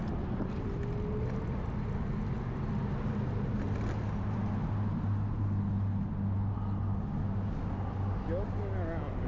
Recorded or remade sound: recorded